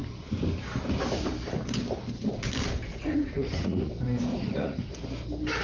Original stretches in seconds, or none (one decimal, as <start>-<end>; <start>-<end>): 0.0-2.9; 3.9-4.3; 4.9-5.6